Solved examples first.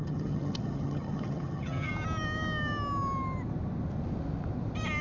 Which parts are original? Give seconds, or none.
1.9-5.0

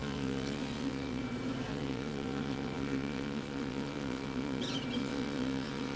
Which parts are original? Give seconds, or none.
1.2-1.7; 4.6-5.0

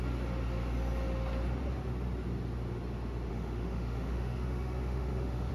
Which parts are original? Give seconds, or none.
0.0-3.3

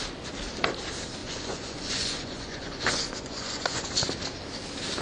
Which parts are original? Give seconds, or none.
0.0-1.2; 3.9-5.0

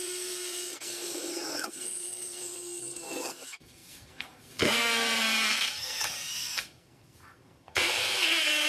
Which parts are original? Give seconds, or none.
none